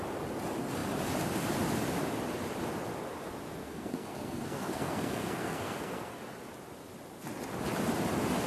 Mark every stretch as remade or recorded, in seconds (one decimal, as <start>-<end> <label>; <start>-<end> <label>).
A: 0.0-3.6 recorded; 3.6-6.2 remade; 6.2-8.5 recorded